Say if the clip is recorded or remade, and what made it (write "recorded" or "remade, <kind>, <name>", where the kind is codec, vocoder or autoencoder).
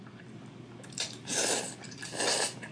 recorded